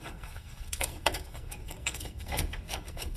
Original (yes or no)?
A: no